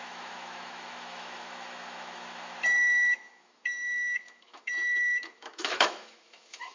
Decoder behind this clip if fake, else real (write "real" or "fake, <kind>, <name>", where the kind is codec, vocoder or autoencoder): fake, autoencoder, DAC-VAE